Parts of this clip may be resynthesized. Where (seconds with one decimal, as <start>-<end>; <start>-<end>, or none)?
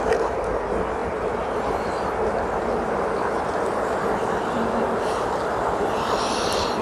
none